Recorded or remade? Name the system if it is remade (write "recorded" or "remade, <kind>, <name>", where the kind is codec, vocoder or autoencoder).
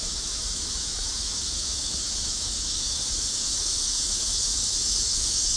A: remade, autoencoder, DAC-VAE